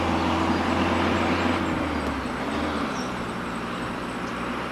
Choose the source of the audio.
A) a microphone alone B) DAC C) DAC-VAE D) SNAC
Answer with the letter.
A